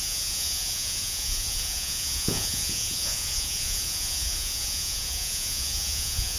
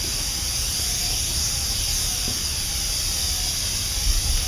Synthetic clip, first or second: first